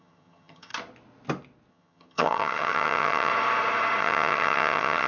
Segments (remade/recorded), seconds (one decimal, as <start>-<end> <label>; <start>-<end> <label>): 0.0-0.7 remade; 0.7-1.7 recorded; 1.7-3.3 remade; 3.3-4.0 recorded; 4.0-5.1 remade